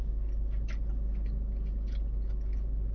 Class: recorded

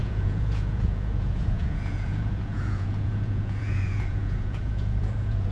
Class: remade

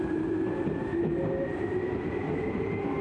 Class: remade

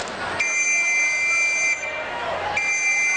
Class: recorded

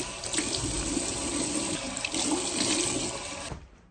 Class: recorded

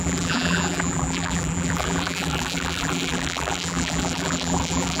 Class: remade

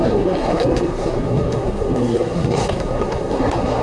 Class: remade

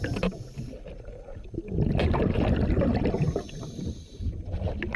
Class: recorded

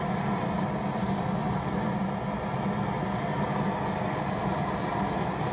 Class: recorded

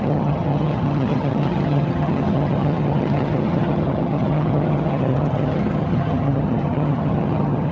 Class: remade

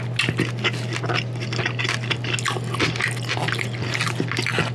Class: recorded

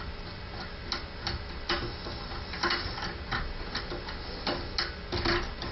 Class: recorded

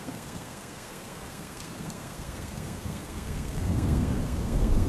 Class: remade